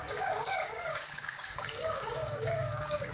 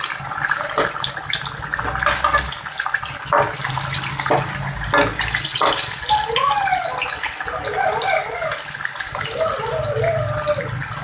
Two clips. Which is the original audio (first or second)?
second